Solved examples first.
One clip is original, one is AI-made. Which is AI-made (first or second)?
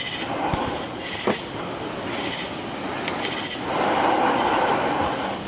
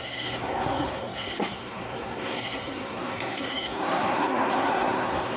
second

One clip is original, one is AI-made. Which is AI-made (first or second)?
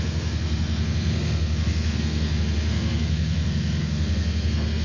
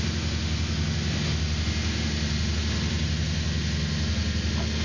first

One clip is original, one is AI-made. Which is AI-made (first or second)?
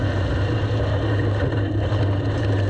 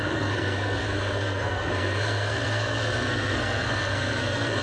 second